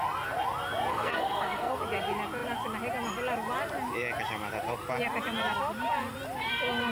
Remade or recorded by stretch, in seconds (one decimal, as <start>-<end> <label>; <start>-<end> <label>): 0.0-0.9 recorded; 0.9-1.8 remade; 1.8-6.9 recorded